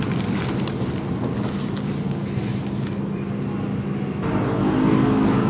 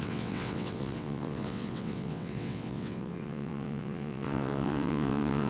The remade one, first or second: second